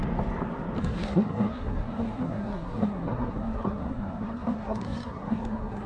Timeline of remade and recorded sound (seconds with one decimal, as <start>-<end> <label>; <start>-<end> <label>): 0.0-0.8 recorded; 0.8-5.9 remade